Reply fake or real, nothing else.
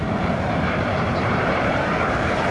fake